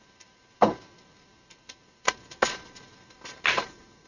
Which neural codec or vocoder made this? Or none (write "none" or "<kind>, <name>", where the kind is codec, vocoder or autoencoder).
none